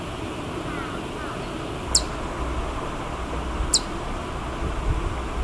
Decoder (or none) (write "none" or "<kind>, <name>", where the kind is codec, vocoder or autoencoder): none